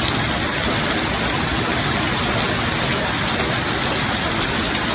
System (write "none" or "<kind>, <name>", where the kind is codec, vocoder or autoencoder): none